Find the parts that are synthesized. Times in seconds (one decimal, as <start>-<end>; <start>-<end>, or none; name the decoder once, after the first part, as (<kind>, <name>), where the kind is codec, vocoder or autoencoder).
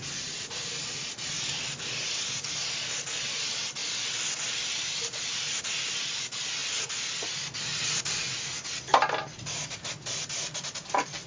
3.8-5.6 (vocoder, BigVGAN v2)